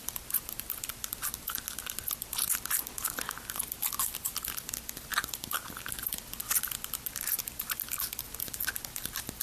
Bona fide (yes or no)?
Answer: yes